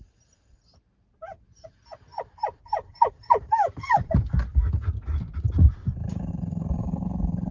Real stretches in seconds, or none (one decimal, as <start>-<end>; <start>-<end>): 0.0-2.1; 4.1-5.8; 6.3-7.5